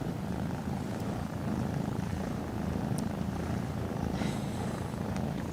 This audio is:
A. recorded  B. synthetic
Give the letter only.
B